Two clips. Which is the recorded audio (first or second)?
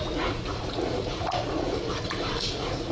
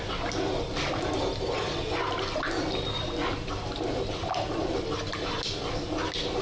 second